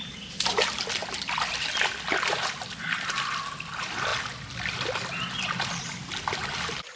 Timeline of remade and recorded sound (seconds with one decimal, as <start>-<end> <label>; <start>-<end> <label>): 0.0-7.0 recorded